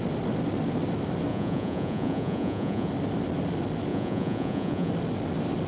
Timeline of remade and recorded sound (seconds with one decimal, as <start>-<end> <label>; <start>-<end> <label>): 0.0-1.3 recorded; 1.3-2.9 remade; 2.9-3.9 recorded; 3.9-4.9 remade; 4.9-5.7 recorded